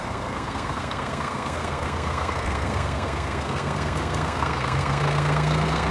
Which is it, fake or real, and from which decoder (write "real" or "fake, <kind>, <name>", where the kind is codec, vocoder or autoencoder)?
fake, codec, SNAC